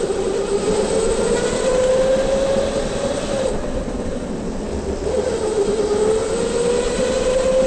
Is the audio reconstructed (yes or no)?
no